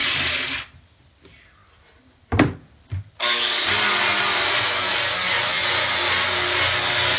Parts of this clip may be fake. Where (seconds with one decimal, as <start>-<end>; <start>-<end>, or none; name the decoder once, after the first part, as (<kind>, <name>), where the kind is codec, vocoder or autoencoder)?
none